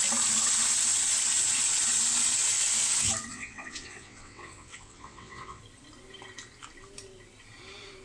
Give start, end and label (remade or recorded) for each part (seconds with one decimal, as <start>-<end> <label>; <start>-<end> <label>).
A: 0.0-3.3 recorded; 3.3-5.6 remade; 5.6-8.0 recorded

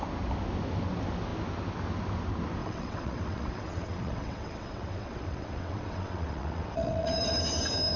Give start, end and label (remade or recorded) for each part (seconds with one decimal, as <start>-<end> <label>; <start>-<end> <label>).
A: 0.0-2.6 recorded; 2.6-7.4 remade; 7.4-8.0 recorded